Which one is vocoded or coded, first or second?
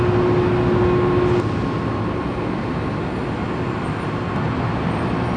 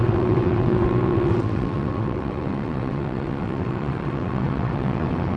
second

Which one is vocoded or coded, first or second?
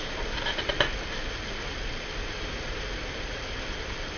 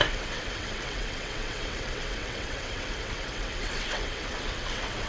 second